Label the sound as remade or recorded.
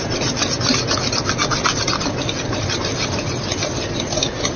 recorded